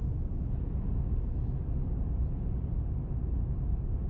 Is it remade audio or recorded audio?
recorded